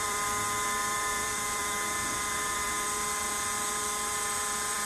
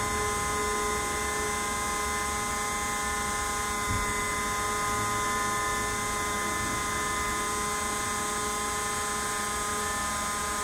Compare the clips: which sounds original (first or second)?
second